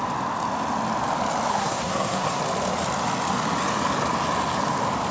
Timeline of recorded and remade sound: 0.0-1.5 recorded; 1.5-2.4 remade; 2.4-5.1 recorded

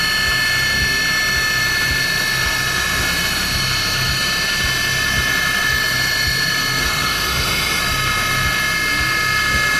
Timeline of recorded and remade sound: 0.0-6.8 recorded; 6.8-7.8 remade; 7.8-9.8 recorded

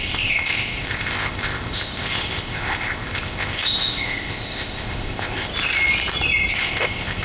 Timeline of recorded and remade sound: 0.0-5.5 remade; 5.5-6.5 recorded; 6.5-7.2 remade

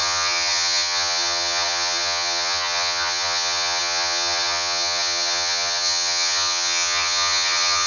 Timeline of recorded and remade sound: 0.0-7.9 remade

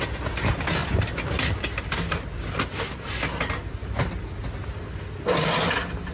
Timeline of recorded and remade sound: 0.0-6.1 recorded

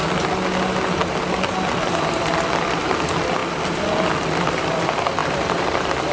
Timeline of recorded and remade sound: 0.0-1.3 recorded; 1.3-3.4 remade; 3.4-4.1 recorded; 4.1-5.2 remade; 5.2-6.1 recorded